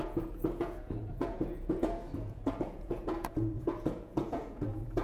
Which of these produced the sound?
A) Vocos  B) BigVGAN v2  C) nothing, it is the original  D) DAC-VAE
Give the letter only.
A